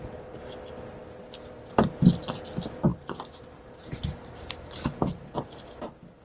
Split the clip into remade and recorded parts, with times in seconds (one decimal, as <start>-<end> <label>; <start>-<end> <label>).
0.0-6.2 recorded